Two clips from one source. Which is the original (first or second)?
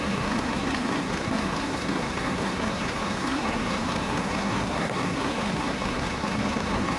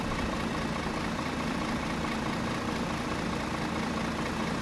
second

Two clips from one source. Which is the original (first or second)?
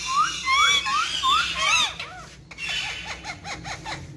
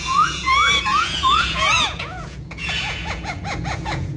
first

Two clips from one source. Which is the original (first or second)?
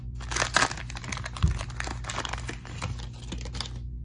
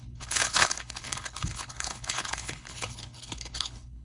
first